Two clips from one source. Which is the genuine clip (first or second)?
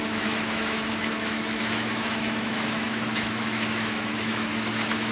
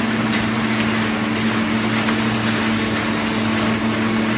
second